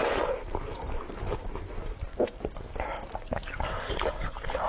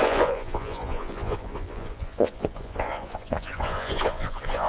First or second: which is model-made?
second